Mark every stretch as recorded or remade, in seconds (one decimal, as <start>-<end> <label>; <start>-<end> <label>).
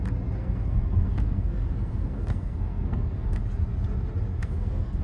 0.0-0.4 recorded; 0.4-3.4 remade; 3.4-4.3 recorded; 4.3-5.0 remade